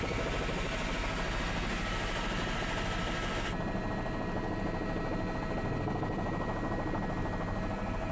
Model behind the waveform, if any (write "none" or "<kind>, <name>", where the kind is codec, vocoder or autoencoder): none